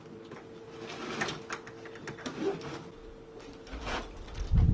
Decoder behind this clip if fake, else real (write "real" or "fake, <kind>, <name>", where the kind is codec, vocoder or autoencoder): real